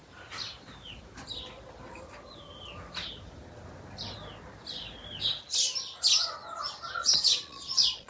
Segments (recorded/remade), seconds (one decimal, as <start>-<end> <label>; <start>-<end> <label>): 0.0-7.0 recorded; 7.0-8.1 remade